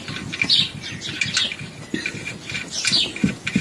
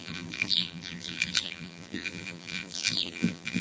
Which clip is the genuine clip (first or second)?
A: first